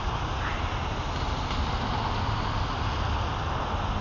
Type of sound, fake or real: real